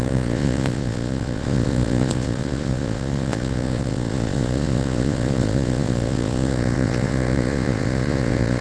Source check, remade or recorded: remade